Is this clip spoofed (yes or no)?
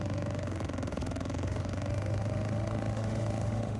yes